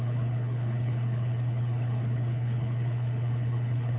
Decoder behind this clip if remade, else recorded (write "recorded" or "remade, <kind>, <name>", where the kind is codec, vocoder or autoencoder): remade, codec, HILCodec